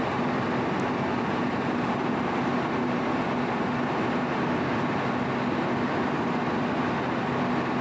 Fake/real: real